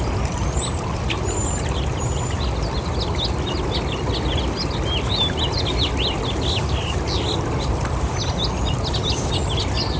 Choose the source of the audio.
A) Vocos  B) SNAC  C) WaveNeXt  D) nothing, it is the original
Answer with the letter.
D